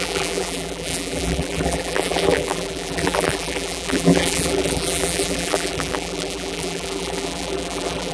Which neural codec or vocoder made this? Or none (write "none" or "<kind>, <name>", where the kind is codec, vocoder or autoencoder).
vocoder, BigVGAN v2